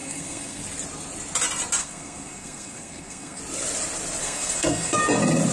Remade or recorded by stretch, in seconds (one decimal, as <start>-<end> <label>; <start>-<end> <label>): 0.0-0.6 remade; 0.6-1.8 recorded; 1.8-3.4 remade; 3.4-4.2 recorded; 4.2-5.0 remade; 5.0-5.5 recorded